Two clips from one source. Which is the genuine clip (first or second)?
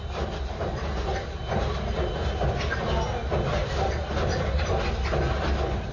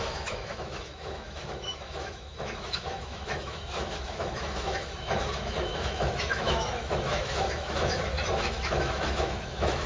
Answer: first